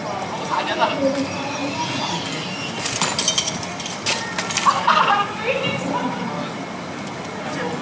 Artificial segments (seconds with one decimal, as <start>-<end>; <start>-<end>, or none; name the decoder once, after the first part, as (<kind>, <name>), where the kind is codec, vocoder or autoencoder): 1.0-5.6 (vocoder, BigVGAN v2)